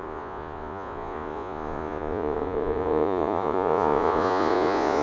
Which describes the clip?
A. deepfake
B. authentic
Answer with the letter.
A